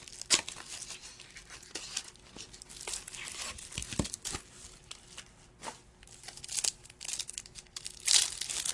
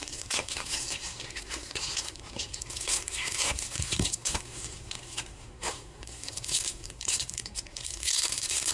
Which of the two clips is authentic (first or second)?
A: first